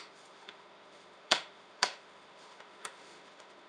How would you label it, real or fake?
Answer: fake